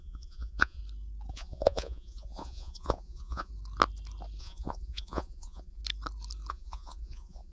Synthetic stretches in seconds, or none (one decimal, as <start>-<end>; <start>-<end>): 0.0-0.8; 1.3-3.5; 4.4-5.8; 6.5-7.5